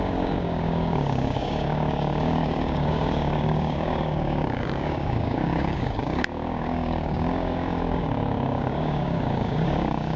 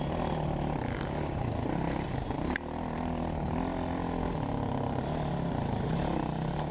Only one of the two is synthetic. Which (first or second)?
first